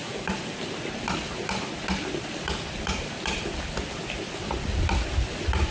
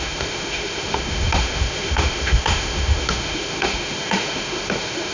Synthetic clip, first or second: second